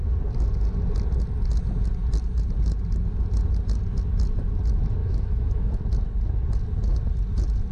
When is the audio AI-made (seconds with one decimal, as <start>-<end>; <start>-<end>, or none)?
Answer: 5.0-5.7